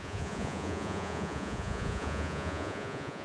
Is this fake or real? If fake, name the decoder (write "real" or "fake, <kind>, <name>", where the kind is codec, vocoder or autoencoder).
fake, vocoder, Vocos